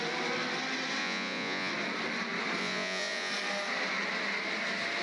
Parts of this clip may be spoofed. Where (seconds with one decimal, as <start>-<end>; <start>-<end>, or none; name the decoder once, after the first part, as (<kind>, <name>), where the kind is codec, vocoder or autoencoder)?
1.0-1.7 (vocoder, Vocos); 2.6-3.3